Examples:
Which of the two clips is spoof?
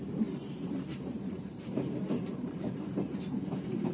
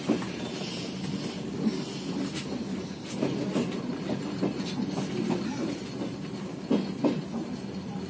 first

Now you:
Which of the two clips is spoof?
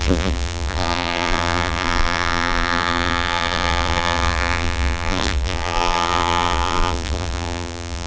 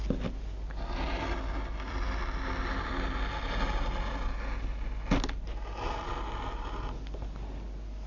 first